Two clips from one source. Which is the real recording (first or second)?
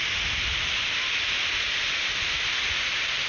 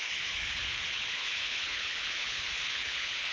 first